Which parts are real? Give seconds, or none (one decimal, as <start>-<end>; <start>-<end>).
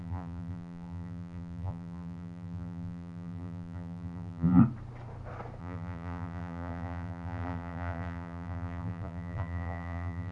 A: 4.6-5.6